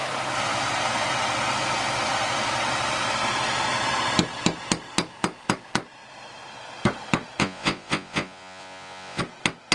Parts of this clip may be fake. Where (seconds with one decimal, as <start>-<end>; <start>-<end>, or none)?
7.4-9.2